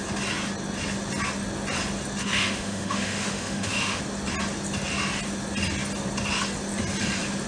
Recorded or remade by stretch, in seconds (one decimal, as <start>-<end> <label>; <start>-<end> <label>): 0.0-2.2 recorded; 2.2-4.0 remade; 4.0-7.5 recorded